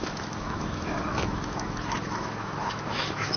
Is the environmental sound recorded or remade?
remade